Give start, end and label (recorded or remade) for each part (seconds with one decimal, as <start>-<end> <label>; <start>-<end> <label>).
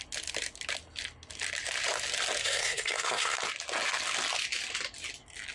0.0-2.4 recorded; 2.4-3.4 remade; 3.4-5.5 recorded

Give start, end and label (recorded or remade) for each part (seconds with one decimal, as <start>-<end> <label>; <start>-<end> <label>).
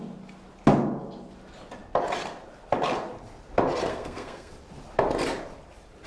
0.0-3.9 recorded; 3.9-4.5 remade; 4.5-6.1 recorded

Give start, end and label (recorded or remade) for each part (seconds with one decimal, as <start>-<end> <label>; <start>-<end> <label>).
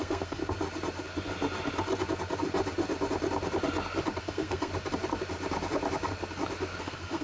0.0-0.4 remade; 0.4-4.2 recorded; 4.2-4.7 remade; 4.7-6.8 recorded; 6.8-7.2 remade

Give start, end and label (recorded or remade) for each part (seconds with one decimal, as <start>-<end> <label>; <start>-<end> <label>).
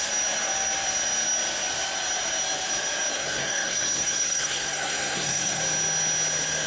0.0-3.1 recorded; 3.1-5.6 remade; 5.6-6.7 recorded